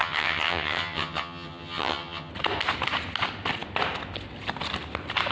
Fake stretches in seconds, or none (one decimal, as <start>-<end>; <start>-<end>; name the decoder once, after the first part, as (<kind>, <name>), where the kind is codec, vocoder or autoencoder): 0.0-2.3 (vocoder, HiFi-GAN)